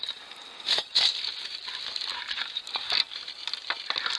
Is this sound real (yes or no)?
yes